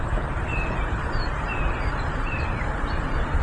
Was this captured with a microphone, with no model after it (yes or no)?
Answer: no